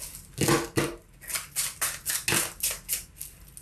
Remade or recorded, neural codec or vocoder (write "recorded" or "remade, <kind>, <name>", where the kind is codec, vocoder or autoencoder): recorded